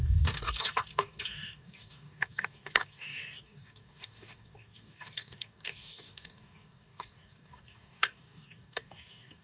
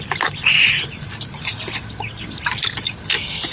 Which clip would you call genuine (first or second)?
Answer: second